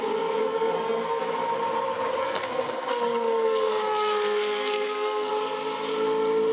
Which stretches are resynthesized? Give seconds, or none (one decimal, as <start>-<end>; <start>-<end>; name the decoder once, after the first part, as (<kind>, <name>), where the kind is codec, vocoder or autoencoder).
0.4-1.2 (codec, SNAC); 2.2-5.3